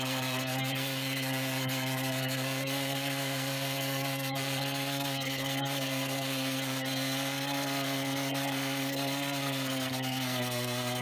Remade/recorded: remade